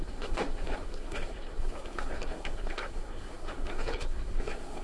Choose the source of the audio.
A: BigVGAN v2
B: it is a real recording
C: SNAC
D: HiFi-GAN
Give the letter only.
C